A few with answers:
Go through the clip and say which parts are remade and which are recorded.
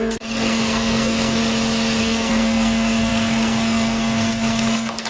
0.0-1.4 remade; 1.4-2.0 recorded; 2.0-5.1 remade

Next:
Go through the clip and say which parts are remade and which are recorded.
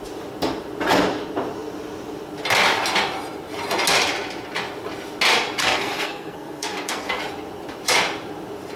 0.0-5.6 recorded; 5.6-7.2 remade; 7.2-8.8 recorded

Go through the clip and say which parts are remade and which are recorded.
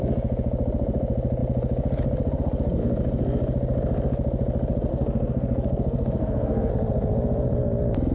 0.0-4.9 recorded; 4.9-6.7 remade; 6.7-8.1 recorded